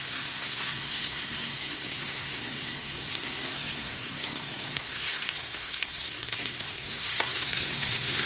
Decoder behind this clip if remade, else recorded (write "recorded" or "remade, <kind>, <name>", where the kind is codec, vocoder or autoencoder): remade, codec, SNAC